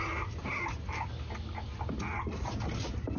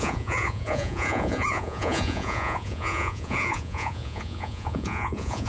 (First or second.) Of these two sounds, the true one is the first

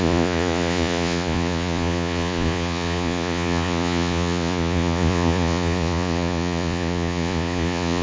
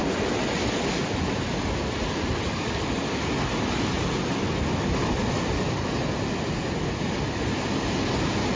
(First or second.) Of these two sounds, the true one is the second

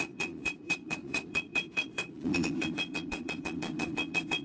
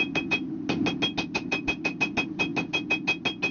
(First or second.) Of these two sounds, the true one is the second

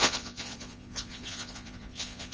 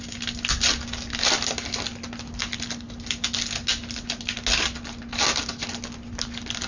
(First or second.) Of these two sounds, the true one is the second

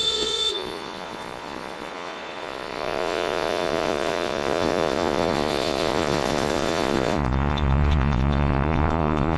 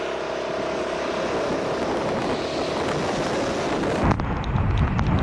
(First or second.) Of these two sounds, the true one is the second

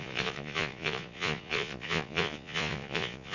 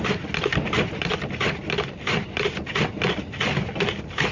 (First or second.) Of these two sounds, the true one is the second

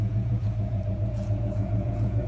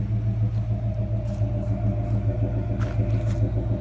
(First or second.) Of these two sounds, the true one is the second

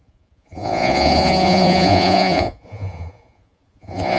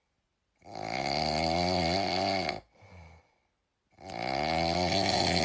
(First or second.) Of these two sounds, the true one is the second